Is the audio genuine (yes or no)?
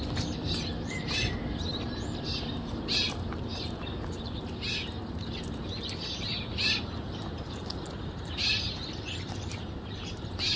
yes